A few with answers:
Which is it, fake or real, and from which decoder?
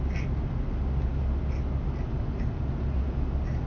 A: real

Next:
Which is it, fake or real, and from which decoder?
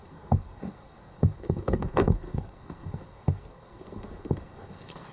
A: fake, codec, SNAC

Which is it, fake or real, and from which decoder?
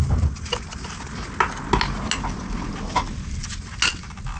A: real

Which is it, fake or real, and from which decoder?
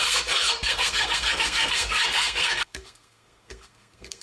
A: fake, codec, SNAC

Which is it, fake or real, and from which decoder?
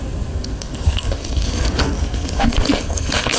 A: fake, codec, SNAC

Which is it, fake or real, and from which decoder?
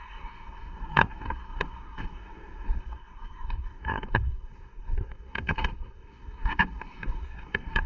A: fake, codec, SNAC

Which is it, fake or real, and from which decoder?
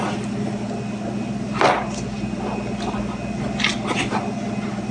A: real